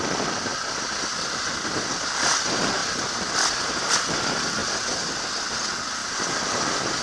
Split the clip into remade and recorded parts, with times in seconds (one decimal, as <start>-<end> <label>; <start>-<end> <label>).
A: 0.0-0.5 recorded; 0.5-1.5 remade; 1.5-4.6 recorded; 4.6-5.1 remade; 5.1-6.0 recorded; 6.0-6.6 remade; 6.6-7.0 recorded